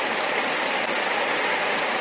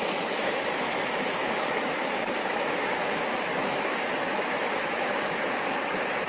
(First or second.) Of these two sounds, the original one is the first